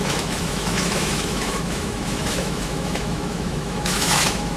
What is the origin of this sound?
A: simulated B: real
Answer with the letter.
A